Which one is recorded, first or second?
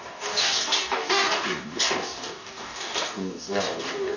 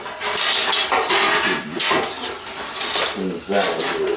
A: second